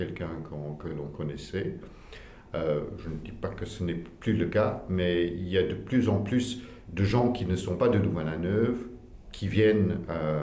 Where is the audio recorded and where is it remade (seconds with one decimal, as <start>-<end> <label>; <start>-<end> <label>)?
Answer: 0.0-6.9 recorded; 6.9-7.8 remade; 7.8-10.4 recorded